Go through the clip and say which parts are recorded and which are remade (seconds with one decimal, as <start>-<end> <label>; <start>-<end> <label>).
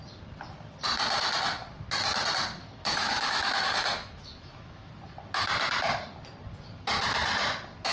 0.0-2.6 recorded; 2.6-4.9 remade; 4.9-7.9 recorded